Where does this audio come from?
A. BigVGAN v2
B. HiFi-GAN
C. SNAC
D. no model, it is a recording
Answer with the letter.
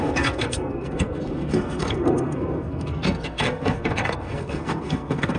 C